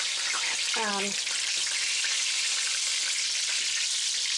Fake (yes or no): no